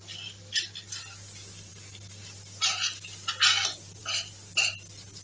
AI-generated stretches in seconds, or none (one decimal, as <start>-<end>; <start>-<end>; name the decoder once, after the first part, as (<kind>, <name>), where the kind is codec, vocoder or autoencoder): none